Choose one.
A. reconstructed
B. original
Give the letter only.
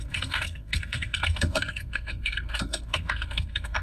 A